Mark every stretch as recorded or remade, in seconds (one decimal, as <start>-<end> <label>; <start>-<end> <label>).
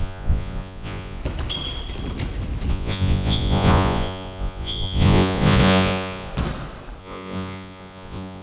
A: 0.0-1.2 remade; 1.2-2.7 recorded; 2.7-6.3 remade; 6.3-7.0 recorded; 7.0-8.4 remade